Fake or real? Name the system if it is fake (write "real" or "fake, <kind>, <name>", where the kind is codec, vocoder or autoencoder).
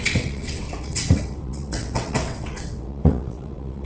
fake, vocoder, WaveNeXt